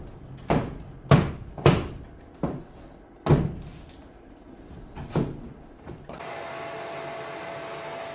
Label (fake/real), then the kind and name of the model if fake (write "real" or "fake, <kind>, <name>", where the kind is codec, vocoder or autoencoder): real